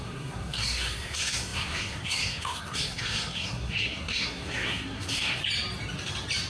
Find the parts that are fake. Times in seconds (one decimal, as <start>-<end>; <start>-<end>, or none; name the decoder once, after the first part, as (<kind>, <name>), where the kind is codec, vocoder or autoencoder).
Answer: 0.0-5.4 (codec, SNAC)